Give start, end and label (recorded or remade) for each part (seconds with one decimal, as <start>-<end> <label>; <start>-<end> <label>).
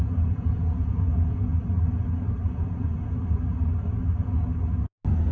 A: 0.0-1.5 remade; 1.5-2.4 recorded; 2.4-2.9 remade; 2.9-5.3 recorded